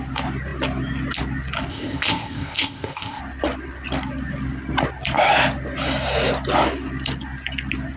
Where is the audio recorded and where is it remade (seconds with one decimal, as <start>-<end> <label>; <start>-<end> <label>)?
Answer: 0.0-1.7 recorded; 1.7-3.2 remade; 3.2-8.0 recorded